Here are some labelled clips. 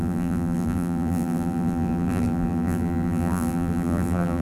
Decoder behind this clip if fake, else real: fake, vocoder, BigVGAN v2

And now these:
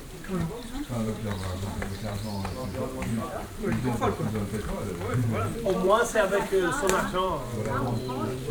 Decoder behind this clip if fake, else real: fake, vocoder, BigVGAN v2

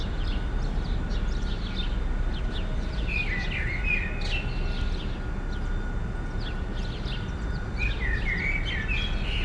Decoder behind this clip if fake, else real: real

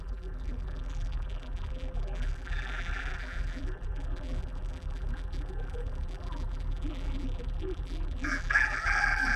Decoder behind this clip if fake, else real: fake, vocoder, BigVGAN v2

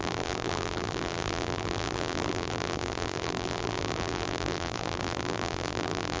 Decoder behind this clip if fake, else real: fake, vocoder, BigVGAN v2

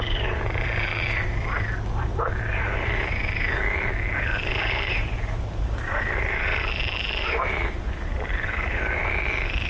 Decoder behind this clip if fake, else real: fake, vocoder, BigVGAN v2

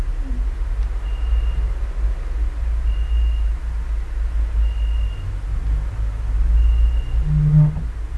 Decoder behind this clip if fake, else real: real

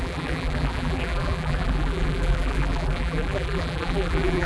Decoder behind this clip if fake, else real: fake, vocoder, BigVGAN v2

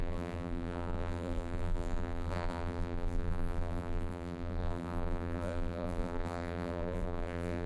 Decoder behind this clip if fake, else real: fake, vocoder, BigVGAN v2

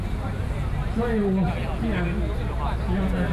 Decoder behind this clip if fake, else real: real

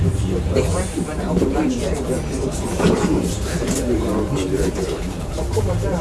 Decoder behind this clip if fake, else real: fake, vocoder, BigVGAN v2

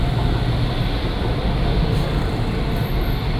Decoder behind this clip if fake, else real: real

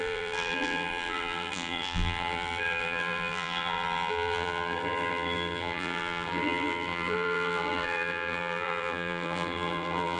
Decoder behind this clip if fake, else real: fake, vocoder, BigVGAN v2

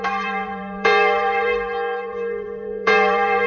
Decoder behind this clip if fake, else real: fake, vocoder, BigVGAN v2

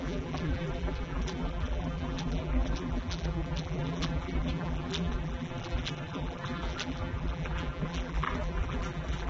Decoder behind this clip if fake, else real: fake, vocoder, BigVGAN v2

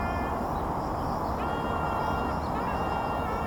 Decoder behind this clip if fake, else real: real